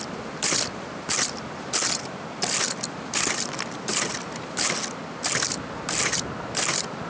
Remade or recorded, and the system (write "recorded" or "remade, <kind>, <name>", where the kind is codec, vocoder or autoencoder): recorded